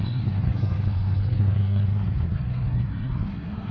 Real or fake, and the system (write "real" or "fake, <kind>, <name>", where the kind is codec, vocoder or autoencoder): fake, codec, SNAC